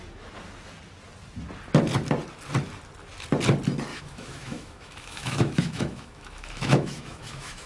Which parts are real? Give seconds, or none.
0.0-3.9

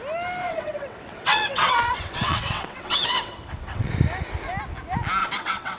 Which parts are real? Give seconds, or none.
0.0-0.4; 3.9-5.2

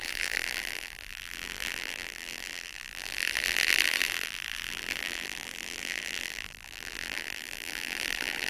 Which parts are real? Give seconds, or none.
none

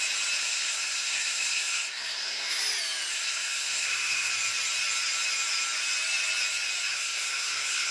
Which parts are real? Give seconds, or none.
0.0-0.4; 2.6-3.1; 4.3-6.9

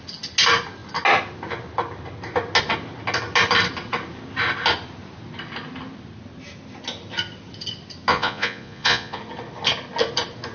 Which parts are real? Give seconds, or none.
0.0-8.1; 9.2-10.5

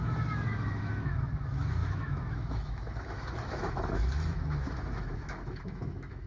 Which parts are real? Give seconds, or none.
none